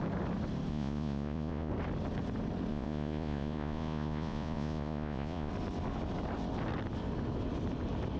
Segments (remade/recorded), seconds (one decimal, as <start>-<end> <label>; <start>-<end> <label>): 0.0-0.7 recorded; 0.7-1.7 remade; 1.7-2.7 recorded; 2.7-5.5 remade; 5.5-8.2 recorded